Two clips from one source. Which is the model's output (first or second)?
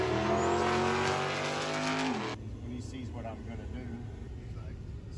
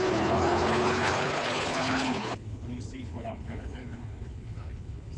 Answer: second